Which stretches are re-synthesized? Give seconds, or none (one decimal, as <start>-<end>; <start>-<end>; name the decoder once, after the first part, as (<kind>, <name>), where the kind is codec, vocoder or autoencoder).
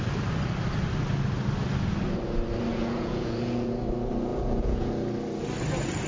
2.7-3.7 (vocoder, Vocos); 4.3-4.9